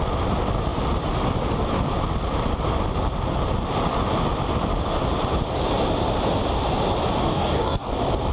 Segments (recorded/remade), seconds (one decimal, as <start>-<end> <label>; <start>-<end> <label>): 0.0-7.2 recorded; 7.2-7.9 remade; 7.9-8.3 recorded